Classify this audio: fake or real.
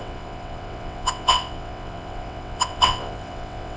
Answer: fake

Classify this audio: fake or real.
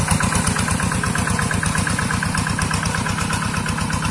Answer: real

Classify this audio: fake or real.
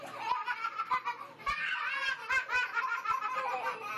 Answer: real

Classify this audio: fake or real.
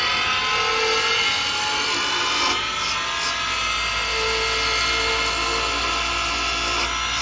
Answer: real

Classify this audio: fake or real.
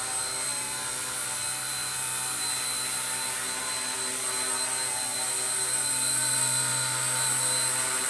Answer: real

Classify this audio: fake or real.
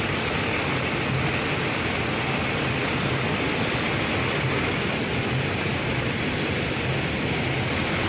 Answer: real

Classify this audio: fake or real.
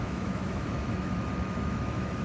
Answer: fake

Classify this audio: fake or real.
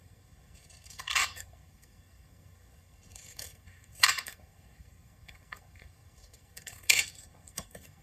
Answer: fake